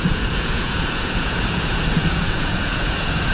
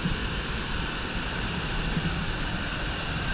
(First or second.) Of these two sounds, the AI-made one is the first